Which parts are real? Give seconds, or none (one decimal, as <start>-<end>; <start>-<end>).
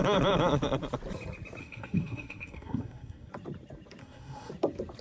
0.0-1.6; 3.3-4.0; 4.5-5.0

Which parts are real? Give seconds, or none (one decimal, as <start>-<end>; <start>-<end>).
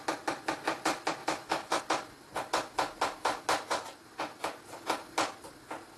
0.0-1.2; 1.8-6.0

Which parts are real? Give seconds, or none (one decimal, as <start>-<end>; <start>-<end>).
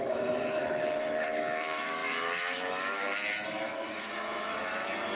none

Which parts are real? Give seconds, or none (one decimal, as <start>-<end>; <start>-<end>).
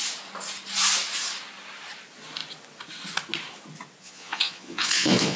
0.0-4.0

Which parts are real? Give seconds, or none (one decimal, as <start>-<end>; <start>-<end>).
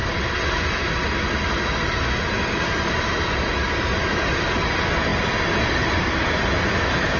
0.0-7.2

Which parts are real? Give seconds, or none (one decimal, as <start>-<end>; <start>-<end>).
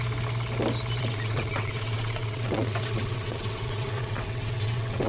0.0-1.0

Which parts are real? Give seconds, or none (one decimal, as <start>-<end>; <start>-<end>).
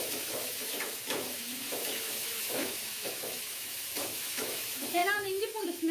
none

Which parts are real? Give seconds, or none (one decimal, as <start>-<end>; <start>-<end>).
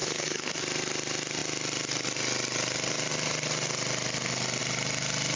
0.6-5.4